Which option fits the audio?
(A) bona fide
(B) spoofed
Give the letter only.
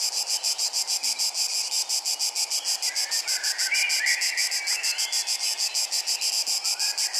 A